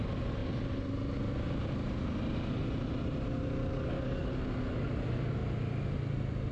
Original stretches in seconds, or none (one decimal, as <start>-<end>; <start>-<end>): 0.0-3.7; 4.3-6.5